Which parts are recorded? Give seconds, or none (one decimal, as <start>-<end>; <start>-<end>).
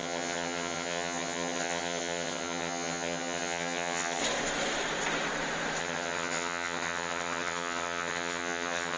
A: 4.2-5.8